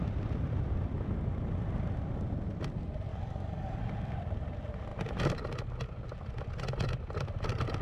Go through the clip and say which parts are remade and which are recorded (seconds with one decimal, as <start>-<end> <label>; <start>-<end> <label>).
0.0-3.1 recorded; 3.1-3.8 remade; 3.8-7.8 recorded